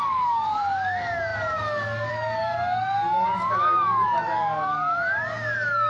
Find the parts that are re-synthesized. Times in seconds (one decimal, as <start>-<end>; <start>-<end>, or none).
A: 0.0-5.9